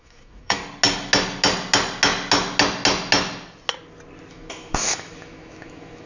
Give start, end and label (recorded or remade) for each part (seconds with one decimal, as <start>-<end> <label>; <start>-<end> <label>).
0.0-0.6 remade; 0.6-4.3 recorded; 4.3-6.1 remade